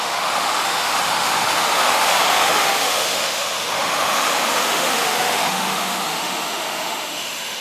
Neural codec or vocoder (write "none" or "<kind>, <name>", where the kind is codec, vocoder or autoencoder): autoencoder, DAC-VAE